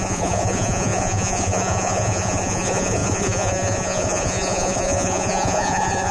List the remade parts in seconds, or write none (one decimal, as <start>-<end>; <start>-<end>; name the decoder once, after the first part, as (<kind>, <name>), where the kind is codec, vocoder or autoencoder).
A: 0.0-6.1 (vocoder, Vocos)